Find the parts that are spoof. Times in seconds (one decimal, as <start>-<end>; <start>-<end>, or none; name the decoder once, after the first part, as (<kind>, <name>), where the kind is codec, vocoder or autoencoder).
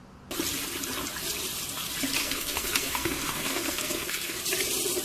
2.2-4.4 (codec, SNAC)